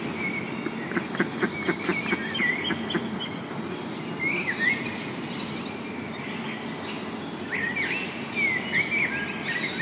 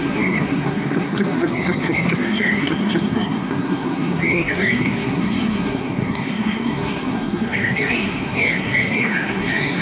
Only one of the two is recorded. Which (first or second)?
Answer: first